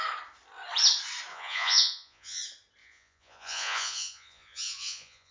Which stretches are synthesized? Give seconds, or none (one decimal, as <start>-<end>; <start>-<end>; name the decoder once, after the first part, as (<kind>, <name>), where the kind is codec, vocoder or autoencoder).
1.3-2.4 (vocoder, Vocos); 2.8-5.3